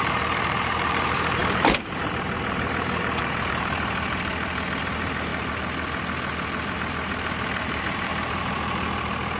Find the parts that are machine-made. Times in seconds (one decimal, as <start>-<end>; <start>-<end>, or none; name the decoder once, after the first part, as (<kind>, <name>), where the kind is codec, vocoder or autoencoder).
0.0-4.3 (vocoder, BigVGAN v2); 4.8-5.3; 6.7-8.1